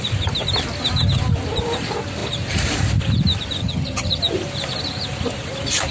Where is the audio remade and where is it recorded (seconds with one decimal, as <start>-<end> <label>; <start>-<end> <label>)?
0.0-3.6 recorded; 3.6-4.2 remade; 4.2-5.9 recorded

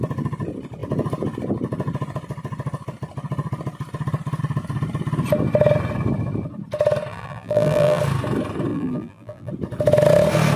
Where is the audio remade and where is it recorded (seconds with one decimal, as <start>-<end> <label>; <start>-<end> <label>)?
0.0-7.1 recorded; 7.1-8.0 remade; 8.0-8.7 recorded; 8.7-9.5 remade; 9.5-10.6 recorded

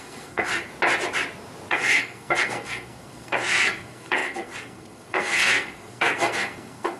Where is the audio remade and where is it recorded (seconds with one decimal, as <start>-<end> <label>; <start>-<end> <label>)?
0.0-0.7 remade; 0.7-1.7 recorded; 1.7-7.0 remade

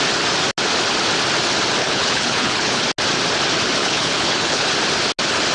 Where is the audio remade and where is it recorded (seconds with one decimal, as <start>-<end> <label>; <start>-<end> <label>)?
0.0-1.8 recorded; 1.8-2.8 remade; 2.8-3.8 recorded; 3.8-4.7 remade; 4.7-5.5 recorded

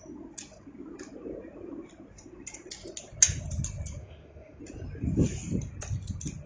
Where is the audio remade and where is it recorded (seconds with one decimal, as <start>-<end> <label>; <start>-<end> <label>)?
0.0-4.0 recorded; 4.0-4.6 remade; 4.6-6.5 recorded

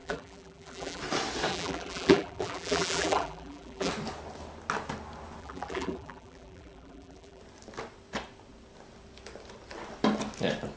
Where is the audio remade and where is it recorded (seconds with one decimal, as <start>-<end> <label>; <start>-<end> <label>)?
0.0-1.0 remade; 1.0-1.5 recorded; 1.5-3.9 remade; 3.9-5.4 recorded; 5.4-7.4 remade; 7.4-10.8 recorded